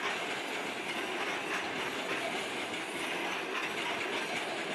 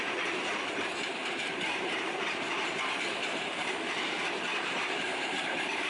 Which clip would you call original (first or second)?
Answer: first